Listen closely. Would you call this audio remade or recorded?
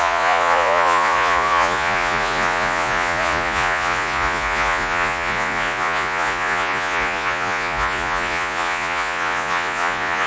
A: remade